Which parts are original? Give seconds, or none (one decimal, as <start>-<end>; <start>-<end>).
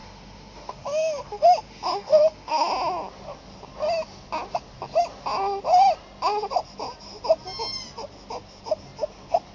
2.7-9.5